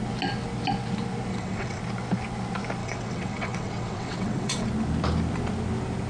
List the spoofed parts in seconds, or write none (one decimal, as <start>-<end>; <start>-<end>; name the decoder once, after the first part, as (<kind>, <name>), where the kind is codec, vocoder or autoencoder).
1.3-1.8 (vocoder, WaveNeXt); 2.8-4.7